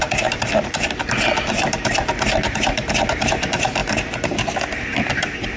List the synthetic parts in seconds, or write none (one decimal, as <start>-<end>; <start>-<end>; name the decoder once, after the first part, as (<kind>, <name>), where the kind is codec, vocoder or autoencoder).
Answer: 0.0-5.6 (vocoder, BigVGAN v2)